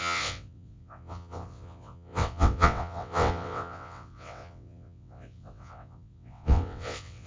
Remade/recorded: remade